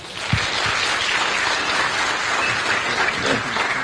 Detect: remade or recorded recorded